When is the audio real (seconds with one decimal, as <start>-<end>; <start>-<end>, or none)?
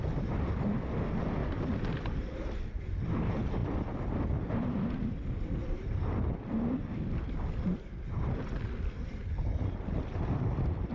0.0-10.9